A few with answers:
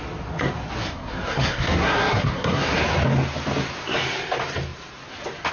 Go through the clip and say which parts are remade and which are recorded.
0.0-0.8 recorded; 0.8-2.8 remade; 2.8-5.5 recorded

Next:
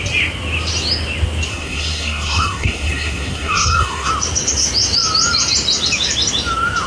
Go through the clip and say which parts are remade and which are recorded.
0.0-1.5 recorded; 1.5-4.1 remade; 4.1-6.9 recorded

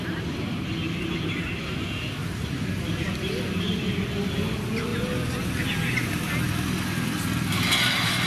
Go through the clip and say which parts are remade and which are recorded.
0.0-8.3 recorded

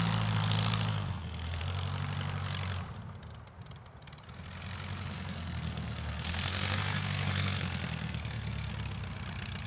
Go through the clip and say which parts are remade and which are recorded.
0.0-0.9 recorded; 0.9-1.6 remade; 1.6-5.1 recorded; 5.1-8.7 remade; 8.7-9.7 recorded

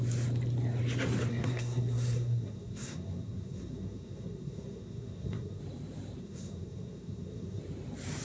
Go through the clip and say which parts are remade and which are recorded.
0.0-1.3 recorded; 1.3-5.6 remade; 5.6-6.2 recorded; 6.2-7.6 remade; 7.6-8.2 recorded